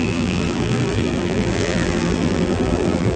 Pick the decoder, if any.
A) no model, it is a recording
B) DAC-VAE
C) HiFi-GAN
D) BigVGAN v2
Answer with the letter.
D